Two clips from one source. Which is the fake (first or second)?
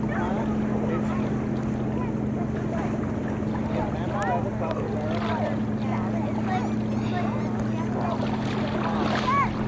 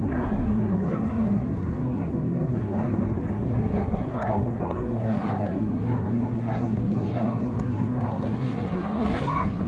second